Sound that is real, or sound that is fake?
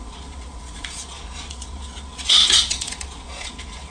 fake